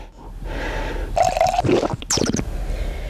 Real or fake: real